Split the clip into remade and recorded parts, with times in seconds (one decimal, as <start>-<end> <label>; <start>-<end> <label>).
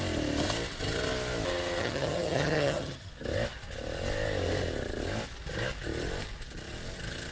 0.0-1.8 recorded; 1.8-3.1 remade; 3.1-7.3 recorded